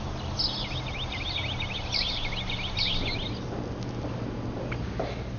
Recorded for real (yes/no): yes